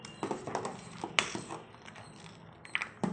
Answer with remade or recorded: recorded